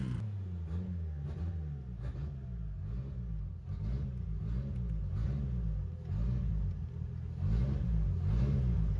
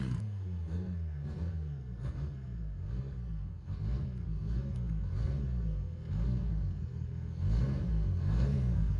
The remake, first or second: second